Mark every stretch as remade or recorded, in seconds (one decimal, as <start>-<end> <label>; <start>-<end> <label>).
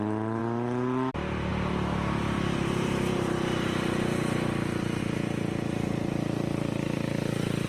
0.0-1.5 recorded; 1.5-5.0 remade; 5.0-7.7 recorded